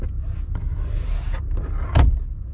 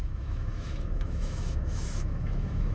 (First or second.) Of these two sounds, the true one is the first